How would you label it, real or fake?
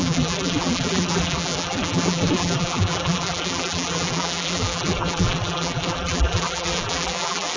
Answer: fake